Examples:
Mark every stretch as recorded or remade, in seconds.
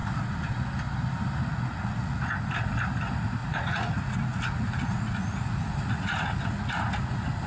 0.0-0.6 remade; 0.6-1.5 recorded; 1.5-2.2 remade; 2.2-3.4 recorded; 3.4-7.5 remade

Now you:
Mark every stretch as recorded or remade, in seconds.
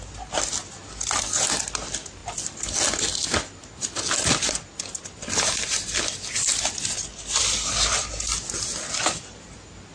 0.0-9.9 recorded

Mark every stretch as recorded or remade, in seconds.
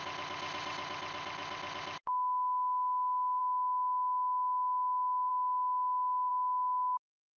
0.0-7.4 recorded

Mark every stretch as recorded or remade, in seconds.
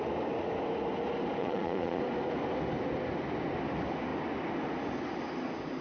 0.0-1.4 recorded; 1.4-2.0 remade; 2.0-5.8 recorded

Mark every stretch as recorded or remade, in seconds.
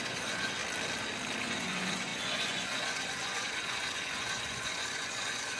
0.0-0.6 remade; 0.6-1.4 recorded; 1.4-5.6 remade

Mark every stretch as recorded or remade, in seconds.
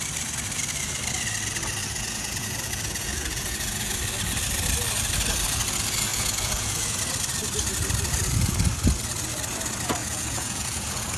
0.0-1.8 recorded; 1.8-4.0 remade; 4.0-6.1 recorded; 6.1-7.0 remade; 7.0-10.0 recorded; 10.0-11.2 remade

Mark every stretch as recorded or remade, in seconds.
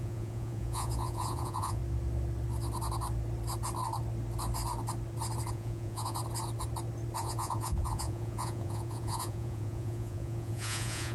0.0-1.8 remade; 1.8-5.5 recorded; 5.5-6.2 remade; 6.2-7.2 recorded; 7.2-11.1 remade